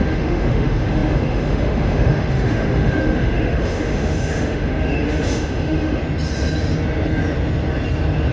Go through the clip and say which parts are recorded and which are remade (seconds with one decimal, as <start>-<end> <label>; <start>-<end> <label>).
0.0-6.0 remade; 6.0-8.3 recorded